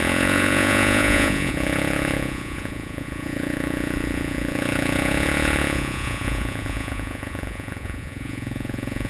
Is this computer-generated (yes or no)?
yes